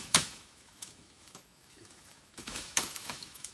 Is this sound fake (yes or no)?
yes